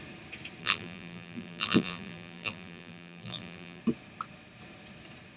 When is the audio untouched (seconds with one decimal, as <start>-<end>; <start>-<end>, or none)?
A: 0.0-0.6; 3.8-5.4

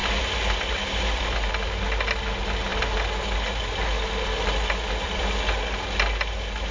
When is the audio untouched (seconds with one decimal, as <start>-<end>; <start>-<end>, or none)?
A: 1.5-6.7